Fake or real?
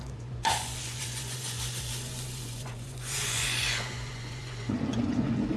fake